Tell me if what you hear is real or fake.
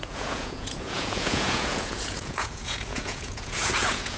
fake